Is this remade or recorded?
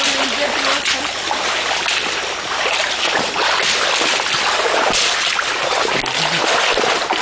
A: recorded